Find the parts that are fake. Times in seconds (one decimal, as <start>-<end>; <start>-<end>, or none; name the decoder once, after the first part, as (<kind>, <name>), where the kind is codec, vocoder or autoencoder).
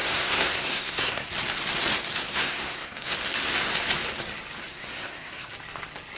0.0-1.3 (codec, SNAC); 2.3-3.1; 4.7-5.5